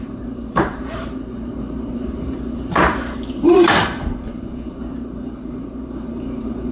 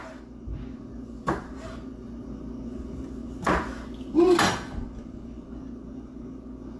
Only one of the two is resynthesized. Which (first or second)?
first